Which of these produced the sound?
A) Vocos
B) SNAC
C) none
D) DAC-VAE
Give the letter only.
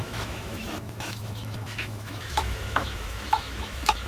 D